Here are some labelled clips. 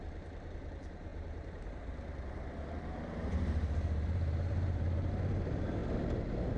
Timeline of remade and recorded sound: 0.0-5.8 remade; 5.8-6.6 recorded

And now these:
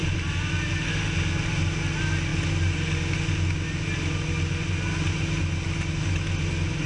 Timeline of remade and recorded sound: 0.0-6.9 recorded

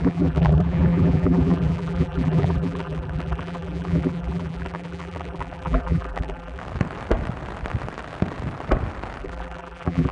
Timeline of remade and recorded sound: 0.0-6.6 remade; 6.6-9.2 recorded; 9.2-10.1 remade

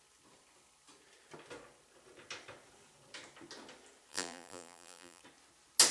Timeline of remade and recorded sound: 0.0-4.1 recorded; 4.1-5.2 remade; 5.2-5.9 recorded

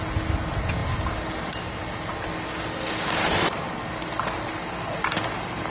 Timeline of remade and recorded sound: 0.0-5.7 recorded

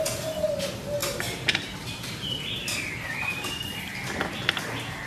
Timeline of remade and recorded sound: 0.0-1.0 recorded; 1.0-4.1 remade; 4.1-5.1 recorded

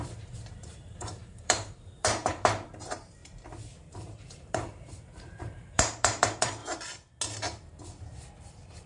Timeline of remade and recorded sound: 0.0-3.2 remade; 3.2-3.9 recorded; 3.9-6.6 remade; 6.6-8.5 recorded; 8.5-8.9 remade